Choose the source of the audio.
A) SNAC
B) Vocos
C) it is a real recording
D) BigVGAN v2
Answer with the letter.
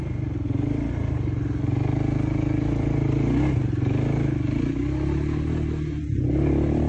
C